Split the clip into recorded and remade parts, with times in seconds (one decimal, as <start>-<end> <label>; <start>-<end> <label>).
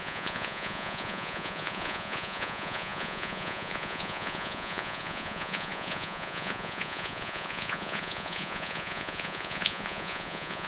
0.0-10.7 remade